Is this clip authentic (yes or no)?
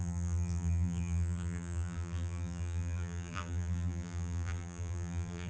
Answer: no